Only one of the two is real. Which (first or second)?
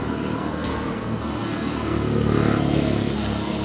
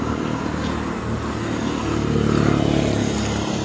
second